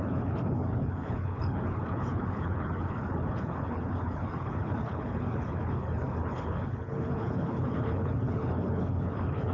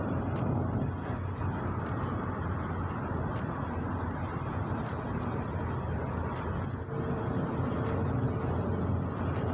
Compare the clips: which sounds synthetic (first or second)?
first